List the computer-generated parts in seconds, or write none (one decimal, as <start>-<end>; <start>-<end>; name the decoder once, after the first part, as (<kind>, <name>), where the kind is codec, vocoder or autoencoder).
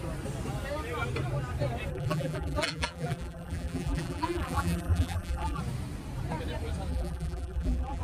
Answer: 1.9-5.6 (vocoder, BigVGAN v2); 6.9-8.0